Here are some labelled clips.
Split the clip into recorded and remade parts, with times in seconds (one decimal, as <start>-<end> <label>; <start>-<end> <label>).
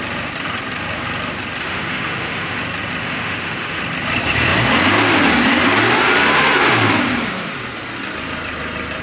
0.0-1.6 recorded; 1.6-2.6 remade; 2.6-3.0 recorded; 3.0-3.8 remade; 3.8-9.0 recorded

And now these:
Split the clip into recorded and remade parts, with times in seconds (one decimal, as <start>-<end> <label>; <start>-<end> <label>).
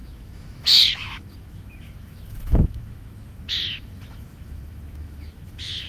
0.0-5.9 remade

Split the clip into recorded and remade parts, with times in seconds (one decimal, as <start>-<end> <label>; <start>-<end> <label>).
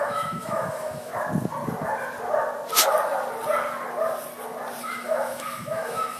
0.0-1.1 remade; 1.1-4.8 recorded; 4.8-6.2 remade